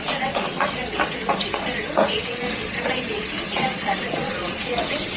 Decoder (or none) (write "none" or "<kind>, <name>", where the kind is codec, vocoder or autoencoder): vocoder, WaveNeXt